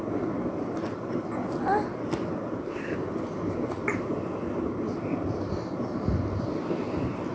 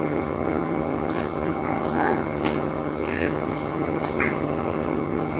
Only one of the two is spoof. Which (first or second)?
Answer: second